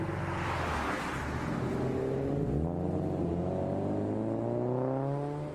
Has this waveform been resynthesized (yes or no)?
no